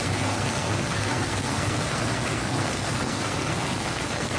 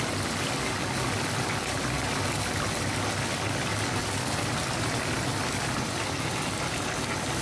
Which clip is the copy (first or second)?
first